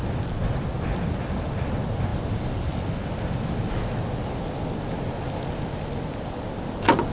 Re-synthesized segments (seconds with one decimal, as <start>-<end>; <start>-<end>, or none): none